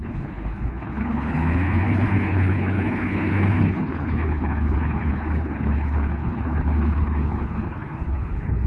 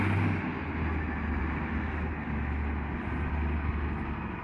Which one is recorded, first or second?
second